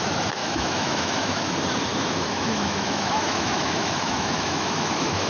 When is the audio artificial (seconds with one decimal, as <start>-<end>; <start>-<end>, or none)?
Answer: 0.4-1.5; 1.9-5.3